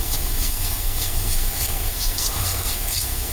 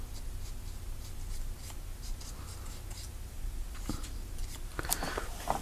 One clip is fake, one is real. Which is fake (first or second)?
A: first